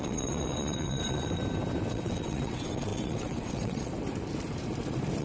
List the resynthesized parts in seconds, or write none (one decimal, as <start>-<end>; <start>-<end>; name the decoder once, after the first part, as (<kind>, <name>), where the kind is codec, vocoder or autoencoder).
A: 0.0-1.4 (vocoder, WaveNeXt); 1.9-3.9